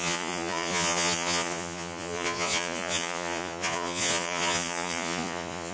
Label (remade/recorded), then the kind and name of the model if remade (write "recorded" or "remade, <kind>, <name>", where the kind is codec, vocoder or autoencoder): remade, vocoder, Vocos